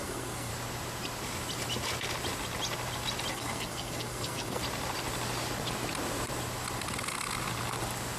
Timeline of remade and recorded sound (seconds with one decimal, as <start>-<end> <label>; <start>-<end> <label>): 0.0-0.5 remade; 0.5-3.3 recorded; 3.3-4.6 remade; 4.6-8.2 recorded